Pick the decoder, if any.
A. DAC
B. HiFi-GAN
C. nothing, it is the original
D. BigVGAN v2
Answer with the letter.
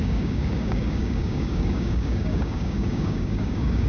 A